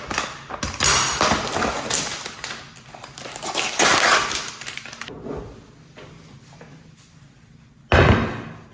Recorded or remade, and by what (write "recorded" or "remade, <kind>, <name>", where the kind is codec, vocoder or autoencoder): recorded